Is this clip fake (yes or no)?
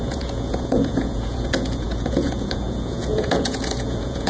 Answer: yes